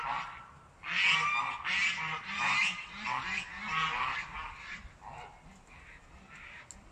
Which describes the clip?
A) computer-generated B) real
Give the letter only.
B